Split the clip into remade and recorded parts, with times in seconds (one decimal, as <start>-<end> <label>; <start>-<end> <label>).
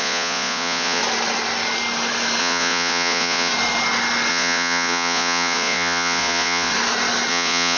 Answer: 0.0-1.0 remade; 1.0-2.4 recorded; 2.4-3.5 remade; 3.5-4.3 recorded; 4.3-6.7 remade; 6.7-7.3 recorded; 7.3-7.8 remade